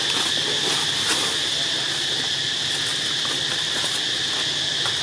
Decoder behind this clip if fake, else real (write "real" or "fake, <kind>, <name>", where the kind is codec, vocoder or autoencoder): real